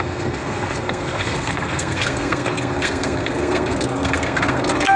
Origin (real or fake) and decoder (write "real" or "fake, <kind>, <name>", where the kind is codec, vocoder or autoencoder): fake, codec, SNAC